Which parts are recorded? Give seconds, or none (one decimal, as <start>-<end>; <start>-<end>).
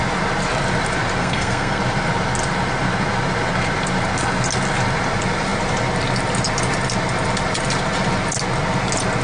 0.0-1.2; 1.8-9.2